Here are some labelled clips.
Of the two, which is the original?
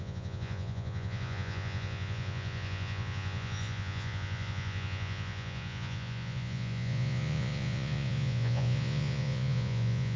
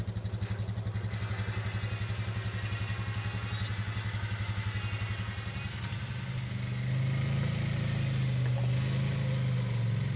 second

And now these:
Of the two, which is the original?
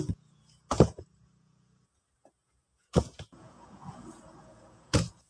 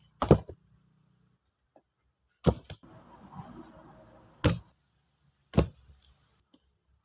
second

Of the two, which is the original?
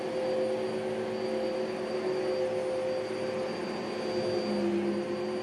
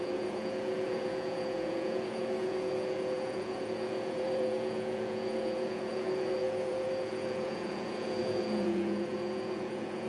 first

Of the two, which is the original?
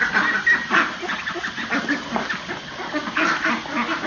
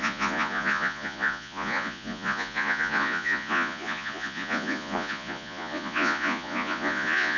first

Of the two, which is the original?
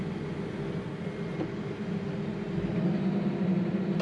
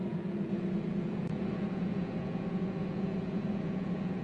first